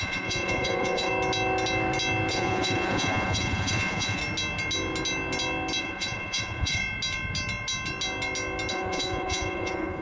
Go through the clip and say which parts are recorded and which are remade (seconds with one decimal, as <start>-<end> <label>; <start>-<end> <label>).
0.0-1.1 remade; 1.1-2.3 recorded; 2.3-4.2 remade; 4.2-5.8 recorded; 5.8-6.8 remade; 6.8-8.7 recorded; 8.7-10.0 remade